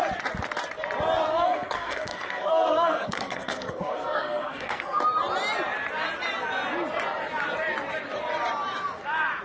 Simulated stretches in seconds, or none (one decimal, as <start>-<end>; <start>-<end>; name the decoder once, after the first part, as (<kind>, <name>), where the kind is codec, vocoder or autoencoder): 1.3-5.0 (codec, SNAC)